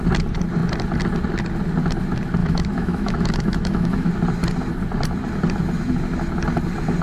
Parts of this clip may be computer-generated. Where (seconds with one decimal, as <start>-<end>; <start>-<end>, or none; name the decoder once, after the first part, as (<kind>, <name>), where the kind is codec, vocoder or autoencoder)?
2.4-4.1 (autoencoder, DAC-VAE)